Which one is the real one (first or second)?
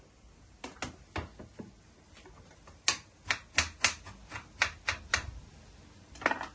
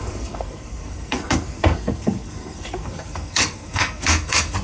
first